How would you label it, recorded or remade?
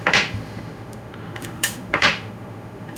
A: remade